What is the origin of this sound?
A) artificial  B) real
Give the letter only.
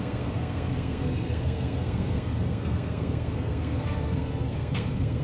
A